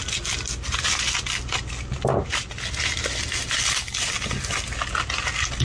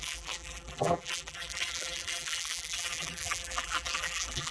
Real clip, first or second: first